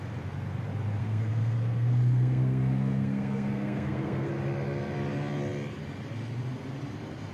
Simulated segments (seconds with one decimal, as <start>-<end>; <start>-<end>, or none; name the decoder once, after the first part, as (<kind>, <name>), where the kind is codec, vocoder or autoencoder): 1.0-4.3 (codec, SNAC)